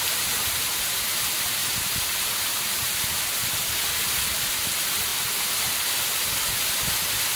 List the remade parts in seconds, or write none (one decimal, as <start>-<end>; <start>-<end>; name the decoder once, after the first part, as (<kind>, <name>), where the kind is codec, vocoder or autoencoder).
1.6-3.0 (vocoder, BigVGAN v2)